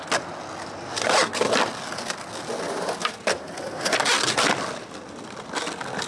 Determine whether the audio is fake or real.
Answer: real